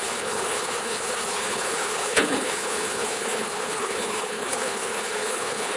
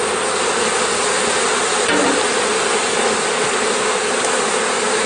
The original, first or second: second